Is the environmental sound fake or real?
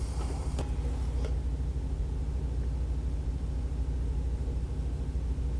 real